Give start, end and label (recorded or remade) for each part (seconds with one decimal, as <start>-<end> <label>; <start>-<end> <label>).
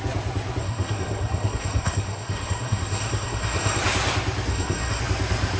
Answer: 0.0-0.6 recorded; 0.6-3.8 remade; 3.8-4.5 recorded; 4.5-5.0 remade; 5.0-5.6 recorded